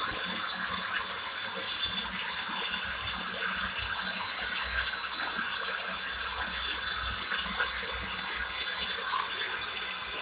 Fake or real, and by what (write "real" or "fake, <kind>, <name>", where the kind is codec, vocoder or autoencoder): real